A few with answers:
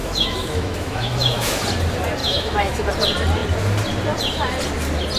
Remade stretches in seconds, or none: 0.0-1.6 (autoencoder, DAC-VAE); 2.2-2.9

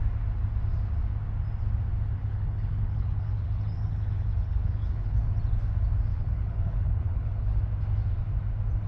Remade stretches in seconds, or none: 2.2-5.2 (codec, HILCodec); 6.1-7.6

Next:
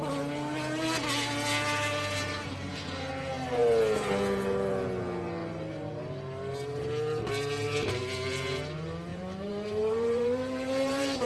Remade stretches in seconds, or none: 5.4-6.0 (vocoder, BigVGAN v2); 9.1-11.3